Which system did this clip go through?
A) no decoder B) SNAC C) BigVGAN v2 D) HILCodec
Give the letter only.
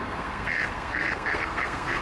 B